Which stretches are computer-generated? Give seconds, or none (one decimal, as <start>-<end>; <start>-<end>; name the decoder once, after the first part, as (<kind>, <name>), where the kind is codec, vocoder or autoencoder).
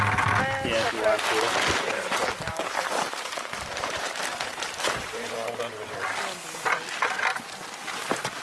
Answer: 2.5-5.6 (vocoder, BigVGAN v2)